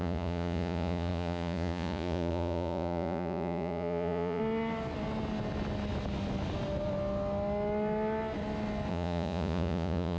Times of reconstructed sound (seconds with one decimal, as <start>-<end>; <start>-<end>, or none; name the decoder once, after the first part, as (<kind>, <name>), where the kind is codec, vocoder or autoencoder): 0.0-4.4 (vocoder, Vocos); 8.9-10.2